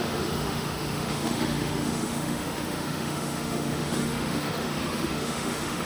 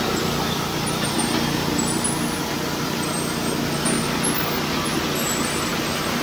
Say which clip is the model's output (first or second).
first